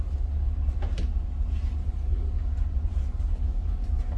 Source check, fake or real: real